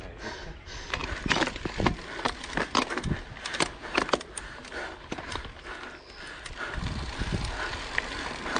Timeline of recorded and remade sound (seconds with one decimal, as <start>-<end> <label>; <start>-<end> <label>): 0.0-8.6 recorded